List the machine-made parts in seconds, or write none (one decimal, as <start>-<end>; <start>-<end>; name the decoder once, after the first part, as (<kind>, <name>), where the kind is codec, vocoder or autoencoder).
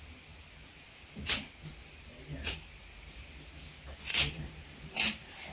none